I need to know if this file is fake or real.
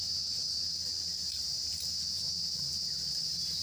fake